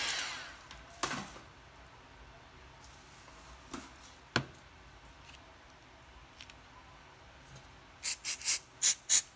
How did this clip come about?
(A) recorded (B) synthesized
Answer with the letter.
A